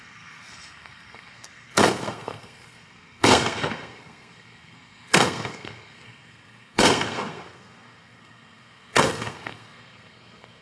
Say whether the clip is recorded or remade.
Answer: remade